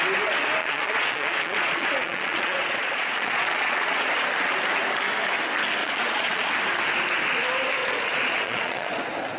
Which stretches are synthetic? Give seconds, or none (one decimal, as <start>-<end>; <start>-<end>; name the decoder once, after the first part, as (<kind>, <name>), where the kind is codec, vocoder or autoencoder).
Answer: 0.6-4.1 (vocoder, Vocos); 5.8-6.5; 7.8-9.0